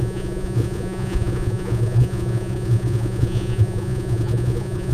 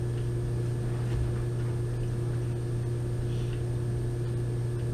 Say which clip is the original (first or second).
second